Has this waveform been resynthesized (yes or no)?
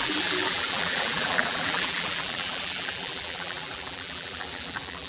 yes